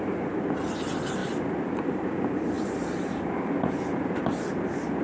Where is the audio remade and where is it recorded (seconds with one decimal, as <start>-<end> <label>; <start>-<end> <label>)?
0.0-1.2 recorded; 1.2-4.2 remade; 4.2-5.0 recorded